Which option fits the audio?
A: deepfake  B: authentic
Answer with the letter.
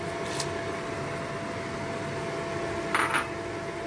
B